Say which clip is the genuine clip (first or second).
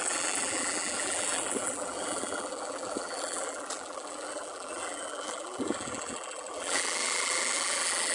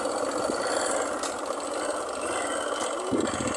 second